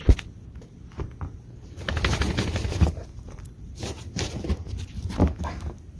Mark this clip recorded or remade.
recorded